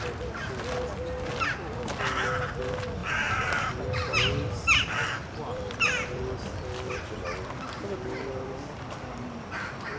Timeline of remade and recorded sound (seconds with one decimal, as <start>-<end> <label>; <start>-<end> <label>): 0.0-3.0 recorded; 3.0-3.8 remade; 3.8-5.2 recorded; 5.2-6.9 remade; 6.9-10.0 recorded